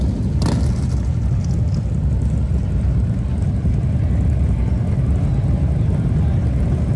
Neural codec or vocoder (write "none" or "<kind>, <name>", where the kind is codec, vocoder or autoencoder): none